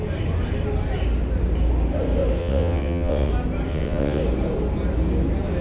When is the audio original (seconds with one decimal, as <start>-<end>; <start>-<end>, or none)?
0.0-2.4; 3.3-3.7; 4.2-5.6